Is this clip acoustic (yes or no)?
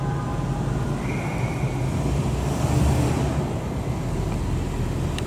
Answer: yes